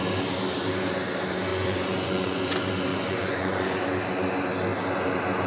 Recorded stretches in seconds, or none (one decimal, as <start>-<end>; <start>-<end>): 0.0-1.5; 2.4-2.9; 3.8-5.5